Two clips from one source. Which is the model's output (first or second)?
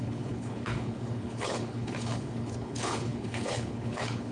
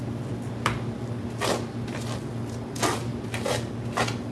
first